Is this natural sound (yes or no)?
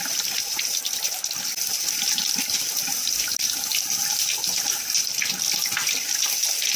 yes